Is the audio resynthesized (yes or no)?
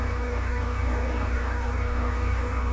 yes